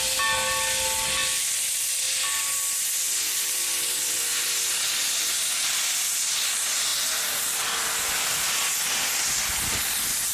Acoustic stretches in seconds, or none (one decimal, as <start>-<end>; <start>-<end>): 0.0-10.3